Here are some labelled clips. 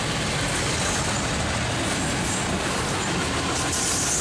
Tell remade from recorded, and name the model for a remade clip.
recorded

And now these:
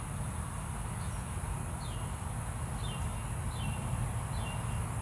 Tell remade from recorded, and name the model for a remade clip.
recorded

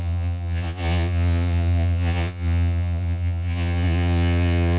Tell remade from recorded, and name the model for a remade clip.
remade, vocoder, Vocos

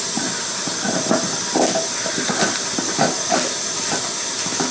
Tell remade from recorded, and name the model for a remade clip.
recorded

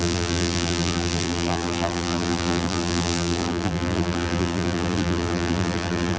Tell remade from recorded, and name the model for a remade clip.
remade, vocoder, BigVGAN v2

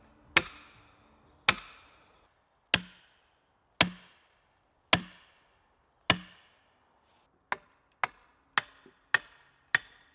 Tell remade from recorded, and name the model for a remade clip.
recorded